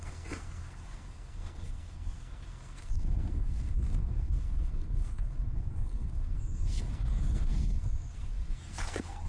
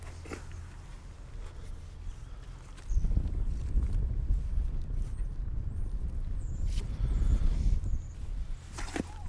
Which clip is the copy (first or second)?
first